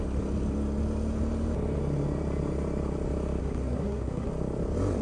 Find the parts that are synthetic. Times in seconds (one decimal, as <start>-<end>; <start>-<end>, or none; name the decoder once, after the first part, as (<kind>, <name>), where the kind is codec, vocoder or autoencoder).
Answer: 3.4-4.3 (codec, SNAC)